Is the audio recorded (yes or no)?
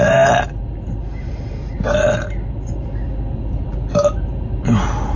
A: yes